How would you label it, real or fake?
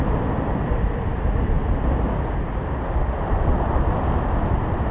real